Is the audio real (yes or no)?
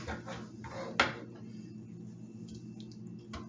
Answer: yes